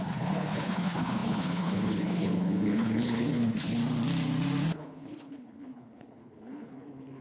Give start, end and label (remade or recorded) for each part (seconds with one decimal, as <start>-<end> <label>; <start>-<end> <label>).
0.0-3.8 remade; 3.8-4.7 recorded; 4.7-7.2 remade